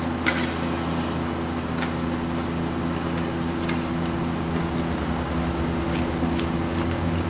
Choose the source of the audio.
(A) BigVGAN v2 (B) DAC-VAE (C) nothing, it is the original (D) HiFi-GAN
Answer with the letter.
C